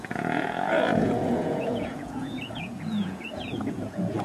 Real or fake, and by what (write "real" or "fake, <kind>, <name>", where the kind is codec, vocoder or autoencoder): fake, vocoder, Vocos